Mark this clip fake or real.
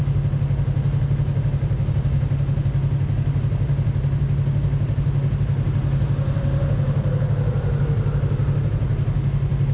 real